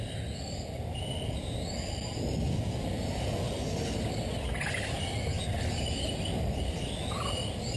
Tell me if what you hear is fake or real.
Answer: real